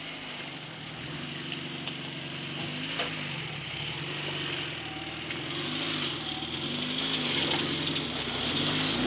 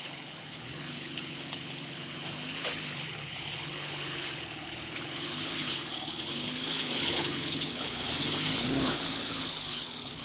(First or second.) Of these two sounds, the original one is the first